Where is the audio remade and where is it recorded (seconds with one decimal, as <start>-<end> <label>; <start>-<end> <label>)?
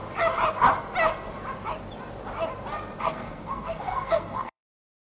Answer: 0.0-3.0 recorded; 3.0-5.0 remade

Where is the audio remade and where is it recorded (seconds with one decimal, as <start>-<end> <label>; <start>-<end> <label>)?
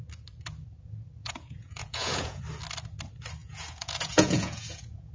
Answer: 0.0-1.2 recorded; 1.2-2.4 remade; 2.4-3.4 recorded; 3.4-5.1 remade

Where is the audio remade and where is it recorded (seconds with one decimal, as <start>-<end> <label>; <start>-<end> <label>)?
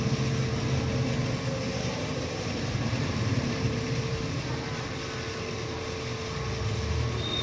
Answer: 0.0-1.7 recorded; 1.7-4.9 remade; 4.9-7.4 recorded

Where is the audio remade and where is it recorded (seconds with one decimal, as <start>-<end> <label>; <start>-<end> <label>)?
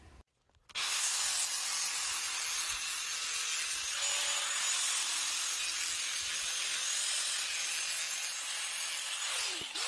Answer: 0.0-0.7 recorded; 0.7-1.2 remade; 1.2-9.9 recorded